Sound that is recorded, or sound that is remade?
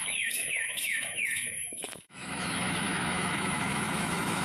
remade